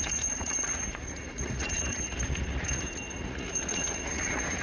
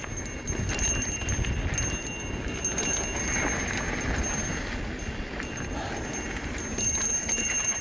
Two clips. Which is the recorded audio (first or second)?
second